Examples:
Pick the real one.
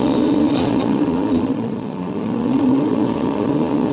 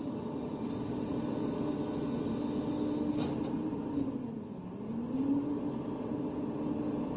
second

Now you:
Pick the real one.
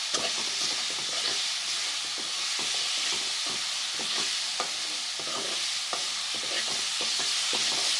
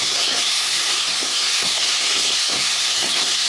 first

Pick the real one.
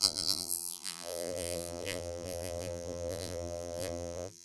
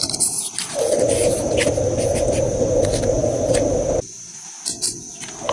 second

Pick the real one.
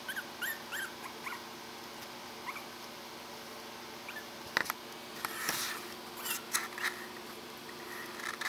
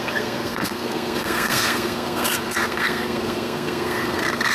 first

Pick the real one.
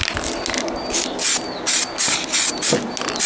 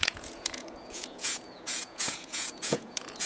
first